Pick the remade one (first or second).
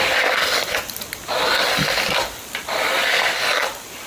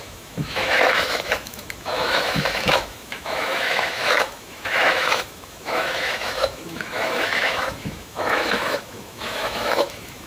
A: second